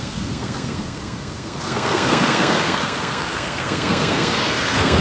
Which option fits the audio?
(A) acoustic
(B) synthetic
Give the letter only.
B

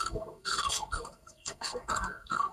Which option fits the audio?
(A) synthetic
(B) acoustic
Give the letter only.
A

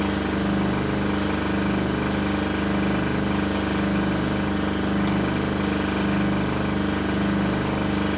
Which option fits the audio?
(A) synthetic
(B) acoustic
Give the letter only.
B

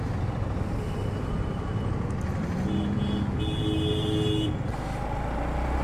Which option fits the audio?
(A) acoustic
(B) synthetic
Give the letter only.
A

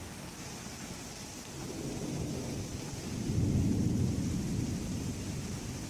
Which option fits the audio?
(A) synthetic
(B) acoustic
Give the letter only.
B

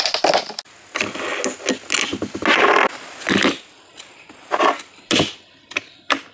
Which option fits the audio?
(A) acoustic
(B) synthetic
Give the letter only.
A